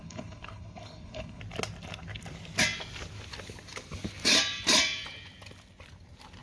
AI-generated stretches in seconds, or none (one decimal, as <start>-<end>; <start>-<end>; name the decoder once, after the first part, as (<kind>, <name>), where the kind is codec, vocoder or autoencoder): 0.0-1.4 (codec, HILCodec)

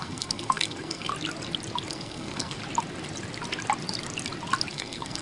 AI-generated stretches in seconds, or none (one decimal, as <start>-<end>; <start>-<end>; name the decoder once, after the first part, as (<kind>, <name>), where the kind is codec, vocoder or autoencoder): 0.0-1.1 (codec, SNAC); 1.9-2.6; 4.7-5.2

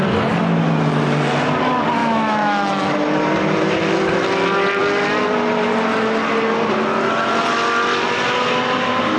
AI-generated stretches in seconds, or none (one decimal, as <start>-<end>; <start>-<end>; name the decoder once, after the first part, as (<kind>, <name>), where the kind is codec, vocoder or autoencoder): 2.0-2.8 (autoencoder, DAC-VAE)

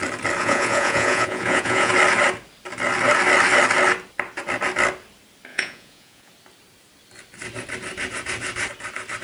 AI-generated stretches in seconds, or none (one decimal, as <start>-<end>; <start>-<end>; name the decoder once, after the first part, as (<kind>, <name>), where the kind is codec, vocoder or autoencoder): 0.4-1.9 (vocoder, Vocos); 5.5-6.3

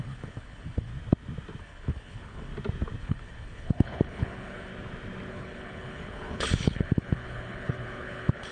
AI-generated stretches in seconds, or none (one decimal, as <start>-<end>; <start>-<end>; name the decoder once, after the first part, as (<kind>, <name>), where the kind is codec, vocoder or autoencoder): 0.0-0.9 (codec, HILCodec); 1.6-2.5; 3.0-4.7; 5.3-8.5

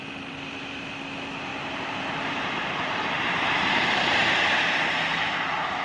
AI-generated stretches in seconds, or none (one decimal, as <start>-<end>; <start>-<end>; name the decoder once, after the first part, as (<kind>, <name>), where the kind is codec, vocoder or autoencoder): 1.5-3.7 (vocoder, BigVGAN v2)

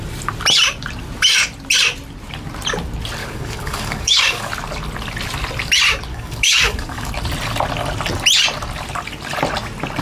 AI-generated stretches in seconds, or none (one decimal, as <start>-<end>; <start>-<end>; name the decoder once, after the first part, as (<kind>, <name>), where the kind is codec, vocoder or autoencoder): 3.2-4.5 (codec, DAC); 6.1-7.1

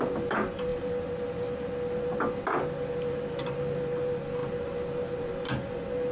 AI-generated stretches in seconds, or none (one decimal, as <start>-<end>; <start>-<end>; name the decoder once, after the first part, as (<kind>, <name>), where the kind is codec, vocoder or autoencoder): none